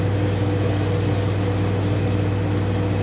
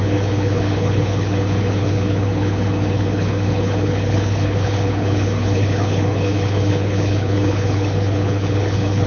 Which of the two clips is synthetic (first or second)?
second